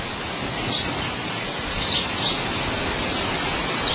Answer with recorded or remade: recorded